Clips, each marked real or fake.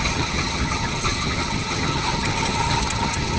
fake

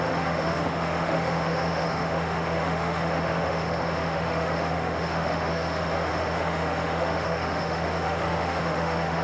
fake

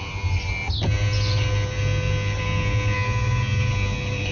real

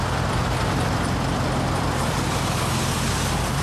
fake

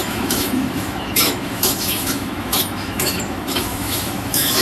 fake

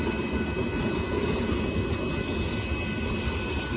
real